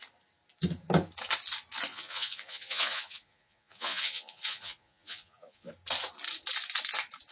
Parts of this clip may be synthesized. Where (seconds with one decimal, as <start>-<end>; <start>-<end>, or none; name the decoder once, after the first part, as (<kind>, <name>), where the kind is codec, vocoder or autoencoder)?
1.9-5.7 (vocoder, Vocos)